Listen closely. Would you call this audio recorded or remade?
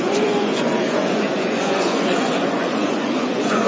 remade